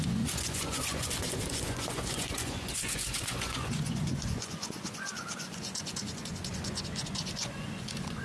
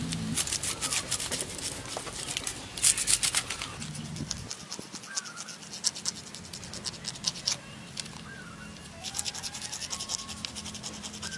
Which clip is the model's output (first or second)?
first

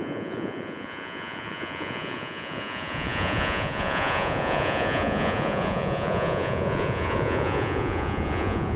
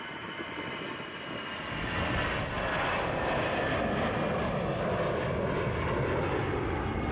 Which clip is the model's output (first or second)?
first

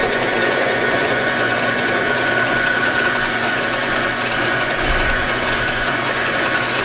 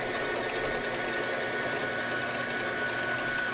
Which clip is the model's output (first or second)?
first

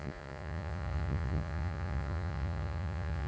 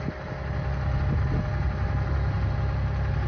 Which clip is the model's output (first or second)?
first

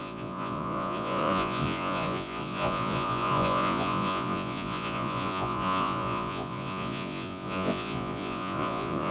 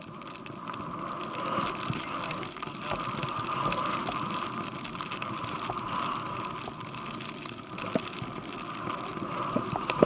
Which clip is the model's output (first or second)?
first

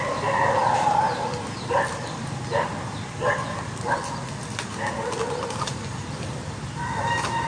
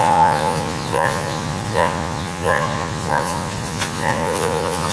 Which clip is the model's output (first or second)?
second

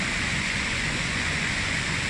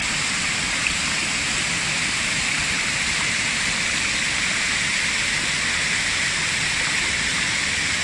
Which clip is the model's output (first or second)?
first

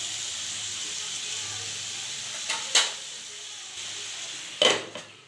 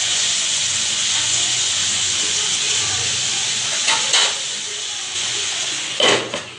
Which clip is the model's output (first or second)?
second